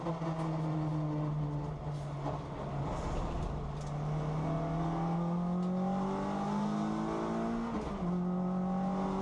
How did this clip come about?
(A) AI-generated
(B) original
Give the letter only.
B